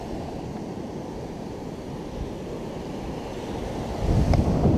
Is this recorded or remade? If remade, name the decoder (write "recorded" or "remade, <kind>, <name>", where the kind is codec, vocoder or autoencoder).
recorded